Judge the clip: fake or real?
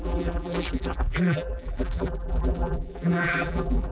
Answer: fake